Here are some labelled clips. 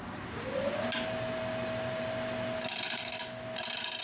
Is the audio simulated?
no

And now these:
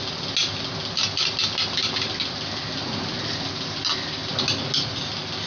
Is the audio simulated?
no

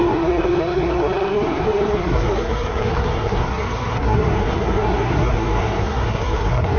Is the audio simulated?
yes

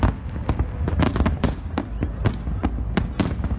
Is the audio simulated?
no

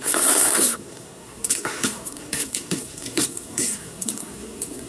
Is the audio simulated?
yes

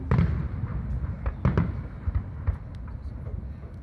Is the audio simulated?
no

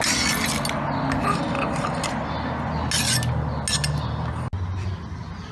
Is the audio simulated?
no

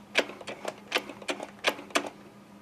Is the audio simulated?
no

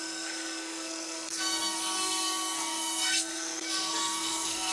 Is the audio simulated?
yes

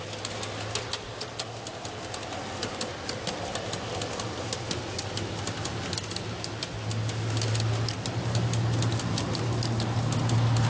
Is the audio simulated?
no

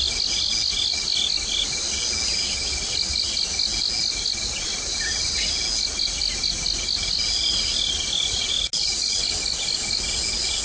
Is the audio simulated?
no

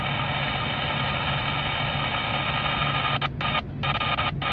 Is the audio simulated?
no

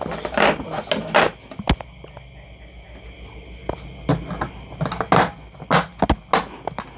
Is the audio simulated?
no